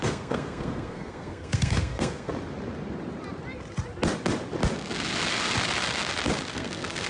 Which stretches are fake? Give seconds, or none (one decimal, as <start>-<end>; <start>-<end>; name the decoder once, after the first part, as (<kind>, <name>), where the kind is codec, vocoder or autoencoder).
0.0-2.3 (codec, SNAC); 6.5-7.1